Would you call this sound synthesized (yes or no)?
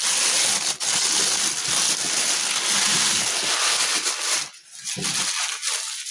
no